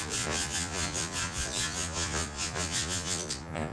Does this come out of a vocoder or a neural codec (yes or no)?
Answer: yes